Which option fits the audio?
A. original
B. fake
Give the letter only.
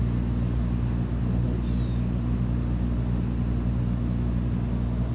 A